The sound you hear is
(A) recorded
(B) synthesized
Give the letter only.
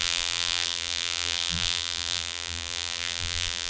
B